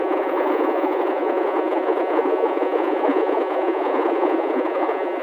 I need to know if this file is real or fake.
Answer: fake